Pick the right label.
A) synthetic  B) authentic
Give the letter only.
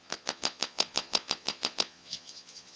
A